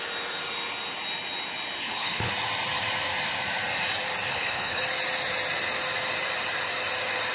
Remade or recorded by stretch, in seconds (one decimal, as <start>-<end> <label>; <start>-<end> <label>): 0.0-1.8 recorded; 1.8-2.3 remade; 2.3-4.3 recorded; 4.3-4.8 remade; 4.8-7.3 recorded